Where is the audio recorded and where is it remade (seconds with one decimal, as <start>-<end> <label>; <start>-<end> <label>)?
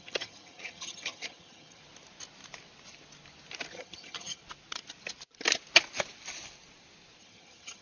0.0-1.8 remade; 1.8-3.7 recorded; 3.7-4.4 remade; 4.4-7.2 recorded; 7.2-7.8 remade